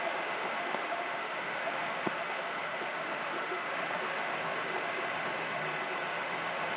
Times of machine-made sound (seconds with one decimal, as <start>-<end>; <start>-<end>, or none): 0.0-5.6; 6.1-6.8